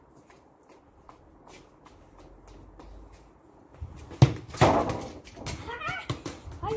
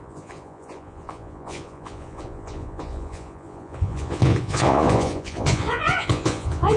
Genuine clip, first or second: first